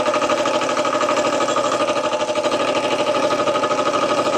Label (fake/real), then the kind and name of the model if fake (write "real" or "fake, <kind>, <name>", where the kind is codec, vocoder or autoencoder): real